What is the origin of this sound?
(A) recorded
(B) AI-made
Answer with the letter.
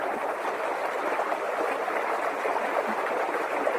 A